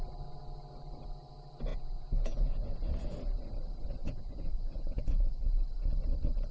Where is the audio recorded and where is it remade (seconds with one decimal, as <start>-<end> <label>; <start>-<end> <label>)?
0.0-1.7 recorded; 1.7-2.8 remade; 2.8-4.0 recorded; 4.0-5.5 remade; 5.5-6.5 recorded